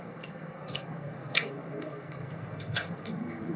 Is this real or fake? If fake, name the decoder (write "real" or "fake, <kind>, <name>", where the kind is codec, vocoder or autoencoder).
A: fake, codec, SNAC